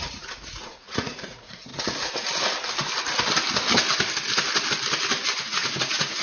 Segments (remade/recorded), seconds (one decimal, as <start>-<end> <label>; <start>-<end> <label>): 0.0-1.7 remade; 1.7-5.4 recorded; 5.4-6.2 remade